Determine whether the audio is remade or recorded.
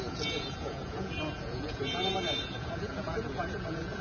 remade